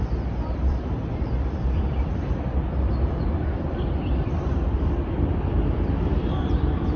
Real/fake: fake